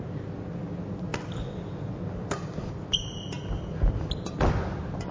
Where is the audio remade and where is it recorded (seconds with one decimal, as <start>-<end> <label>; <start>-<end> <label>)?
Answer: 0.0-5.1 recorded